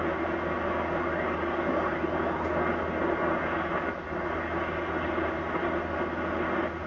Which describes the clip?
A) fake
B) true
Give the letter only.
B